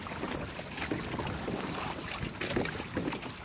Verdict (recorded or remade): recorded